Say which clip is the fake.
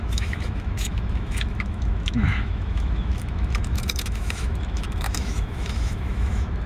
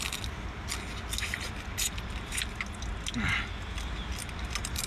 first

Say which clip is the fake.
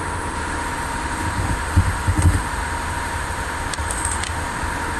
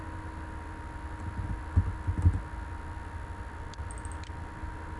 first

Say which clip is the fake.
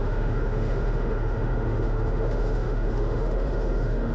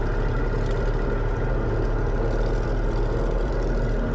first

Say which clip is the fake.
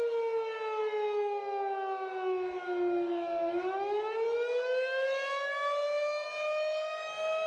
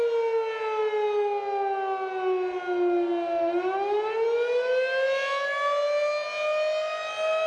first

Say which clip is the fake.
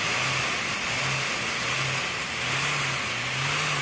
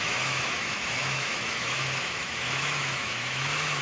second